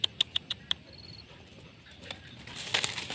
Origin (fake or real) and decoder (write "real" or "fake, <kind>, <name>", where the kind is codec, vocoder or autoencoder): real